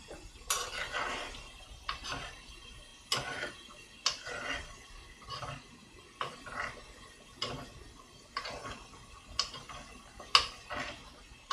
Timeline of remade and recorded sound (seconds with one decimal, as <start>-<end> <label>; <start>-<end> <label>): 0.0-11.5 recorded